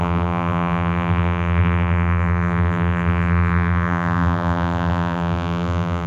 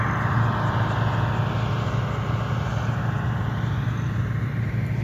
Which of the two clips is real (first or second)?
second